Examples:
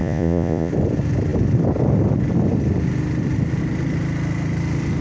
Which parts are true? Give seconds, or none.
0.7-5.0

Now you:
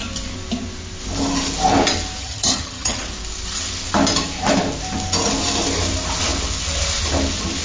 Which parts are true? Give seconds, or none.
0.0-2.2; 3.0-7.6